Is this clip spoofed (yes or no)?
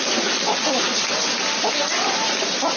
no